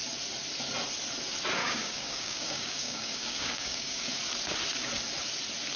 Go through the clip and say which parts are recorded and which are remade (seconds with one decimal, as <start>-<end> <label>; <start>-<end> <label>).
0.0-1.6 recorded; 1.6-4.1 remade; 4.1-5.8 recorded